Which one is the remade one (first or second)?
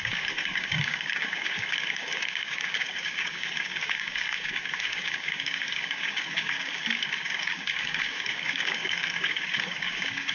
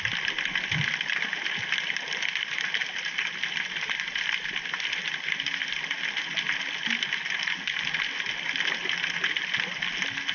first